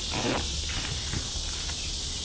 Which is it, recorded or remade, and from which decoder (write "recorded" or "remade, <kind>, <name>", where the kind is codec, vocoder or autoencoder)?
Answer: recorded